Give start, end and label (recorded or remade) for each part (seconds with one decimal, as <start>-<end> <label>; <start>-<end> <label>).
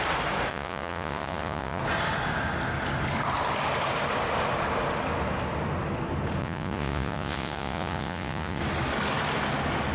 0.0-0.5 recorded; 0.5-1.8 remade; 1.8-6.4 recorded; 6.4-8.6 remade; 8.6-9.9 recorded